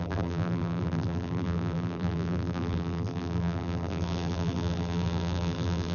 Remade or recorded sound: remade